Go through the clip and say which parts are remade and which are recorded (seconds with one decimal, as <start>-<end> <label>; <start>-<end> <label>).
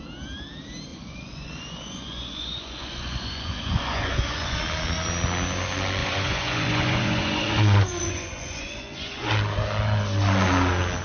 0.0-0.9 recorded; 0.9-4.6 remade; 4.6-6.0 recorded; 6.0-9.3 remade; 9.3-11.0 recorded